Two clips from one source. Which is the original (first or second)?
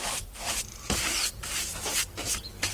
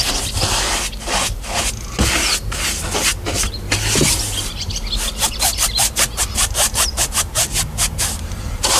second